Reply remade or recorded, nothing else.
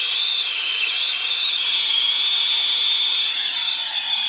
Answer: recorded